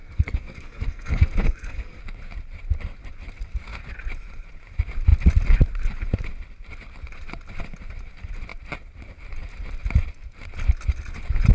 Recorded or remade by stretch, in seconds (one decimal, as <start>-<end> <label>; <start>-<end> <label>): 0.0-2.0 remade; 2.0-11.5 recorded

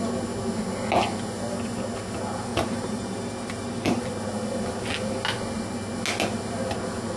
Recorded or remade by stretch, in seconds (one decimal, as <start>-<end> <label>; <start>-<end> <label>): 0.0-2.5 recorded; 2.5-4.0 remade; 4.0-7.2 recorded

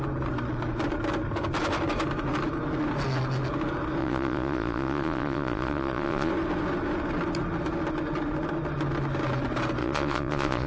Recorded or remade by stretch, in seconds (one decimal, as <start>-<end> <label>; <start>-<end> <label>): 0.0-4.0 recorded; 4.0-6.3 remade; 6.3-9.8 recorded; 9.8-10.7 remade

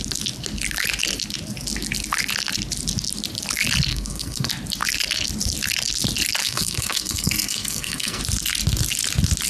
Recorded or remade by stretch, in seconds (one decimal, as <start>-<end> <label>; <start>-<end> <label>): 0.0-3.9 recorded; 3.9-4.5 remade; 4.5-6.4 recorded; 6.4-8.2 remade; 8.2-9.5 recorded

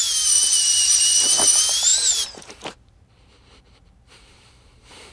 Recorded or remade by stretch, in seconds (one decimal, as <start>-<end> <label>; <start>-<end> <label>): 0.0-5.1 remade